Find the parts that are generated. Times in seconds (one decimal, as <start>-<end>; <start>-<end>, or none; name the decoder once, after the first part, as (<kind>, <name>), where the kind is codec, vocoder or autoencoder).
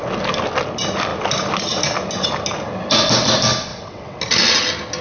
3.7-4.2 (vocoder, WaveNeXt)